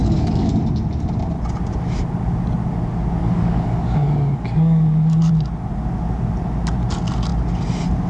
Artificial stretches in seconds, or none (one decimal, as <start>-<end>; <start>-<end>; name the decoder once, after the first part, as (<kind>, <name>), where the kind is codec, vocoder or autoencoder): 0.0-0.5 (codec, DAC); 3.2-5.3